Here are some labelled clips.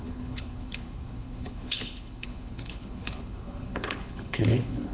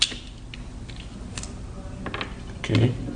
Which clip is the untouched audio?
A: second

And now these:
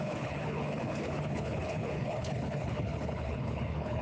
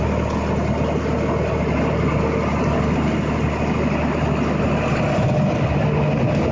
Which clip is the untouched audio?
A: second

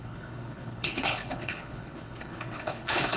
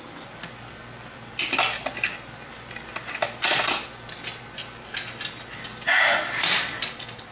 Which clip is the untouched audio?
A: second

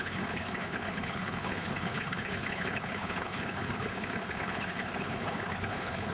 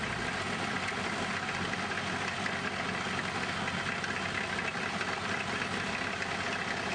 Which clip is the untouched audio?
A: second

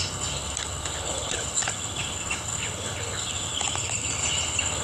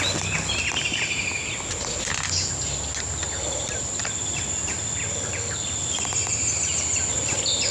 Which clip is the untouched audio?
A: second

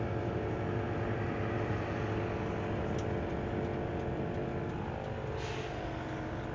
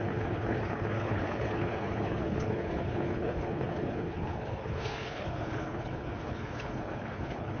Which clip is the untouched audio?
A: first